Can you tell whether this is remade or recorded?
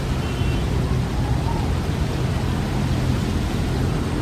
recorded